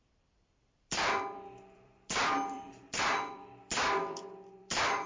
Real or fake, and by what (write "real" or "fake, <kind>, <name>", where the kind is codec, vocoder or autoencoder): fake, vocoder, BigVGAN v2